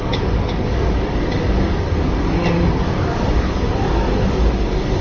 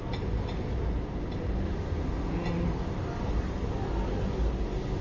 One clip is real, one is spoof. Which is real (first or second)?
second